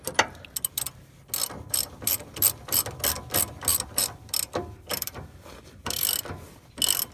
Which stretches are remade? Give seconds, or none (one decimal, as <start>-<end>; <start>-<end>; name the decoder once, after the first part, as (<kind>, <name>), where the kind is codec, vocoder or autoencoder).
none